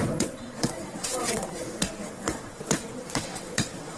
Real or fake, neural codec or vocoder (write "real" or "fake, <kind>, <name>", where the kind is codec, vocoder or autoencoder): fake, vocoder, WaveNeXt